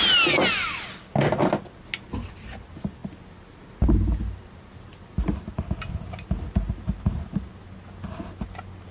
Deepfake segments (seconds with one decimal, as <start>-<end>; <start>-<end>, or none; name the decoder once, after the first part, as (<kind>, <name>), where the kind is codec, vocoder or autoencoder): none